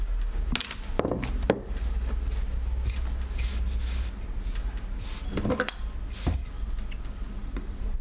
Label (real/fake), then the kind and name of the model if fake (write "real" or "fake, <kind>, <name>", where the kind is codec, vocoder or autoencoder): real